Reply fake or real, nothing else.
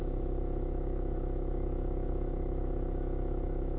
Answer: fake